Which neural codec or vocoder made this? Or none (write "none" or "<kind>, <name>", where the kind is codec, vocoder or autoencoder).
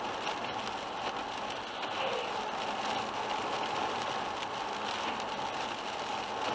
none